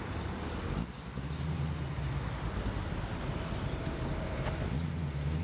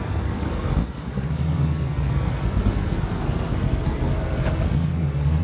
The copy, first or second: second